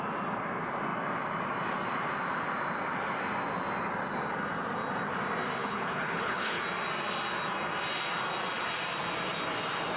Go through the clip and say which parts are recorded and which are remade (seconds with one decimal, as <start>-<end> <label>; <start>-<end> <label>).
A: 0.0-5.6 recorded; 5.6-6.6 remade; 6.6-10.0 recorded